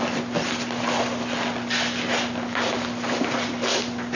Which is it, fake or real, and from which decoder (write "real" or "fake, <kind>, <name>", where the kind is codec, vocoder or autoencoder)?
real